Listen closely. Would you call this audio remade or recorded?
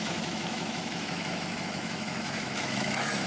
remade